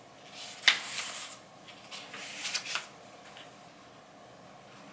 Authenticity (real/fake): real